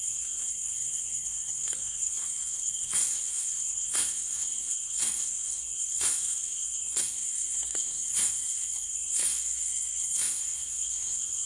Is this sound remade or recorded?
remade